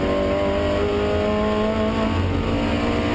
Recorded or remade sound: recorded